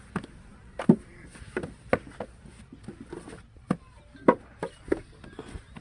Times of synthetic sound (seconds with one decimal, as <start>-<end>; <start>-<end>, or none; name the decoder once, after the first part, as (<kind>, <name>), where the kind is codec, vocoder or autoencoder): none